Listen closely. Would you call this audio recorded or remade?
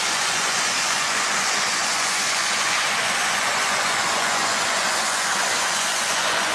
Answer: remade